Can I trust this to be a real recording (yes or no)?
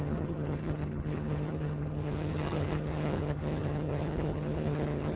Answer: no